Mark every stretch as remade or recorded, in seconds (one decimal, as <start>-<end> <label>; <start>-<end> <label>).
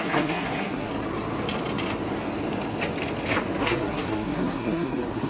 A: 0.0-0.9 remade; 0.9-3.6 recorded; 3.6-5.3 remade